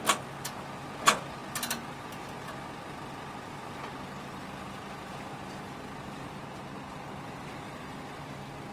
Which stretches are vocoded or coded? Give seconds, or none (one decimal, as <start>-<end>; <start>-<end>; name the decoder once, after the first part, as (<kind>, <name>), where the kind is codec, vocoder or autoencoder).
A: none